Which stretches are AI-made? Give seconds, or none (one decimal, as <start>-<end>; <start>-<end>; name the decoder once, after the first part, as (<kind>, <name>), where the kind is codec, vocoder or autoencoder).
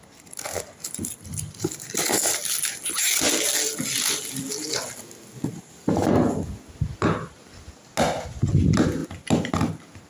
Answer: none